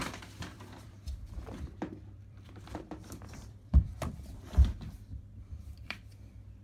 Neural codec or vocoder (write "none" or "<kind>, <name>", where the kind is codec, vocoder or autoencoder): vocoder, BigVGAN v2